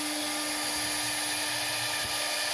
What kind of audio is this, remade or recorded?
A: recorded